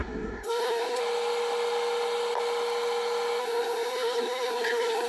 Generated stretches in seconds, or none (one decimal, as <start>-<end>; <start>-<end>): 0.0-1.0; 3.4-5.1